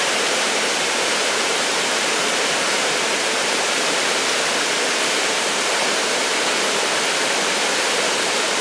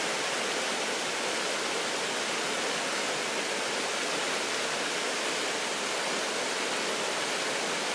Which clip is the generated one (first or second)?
first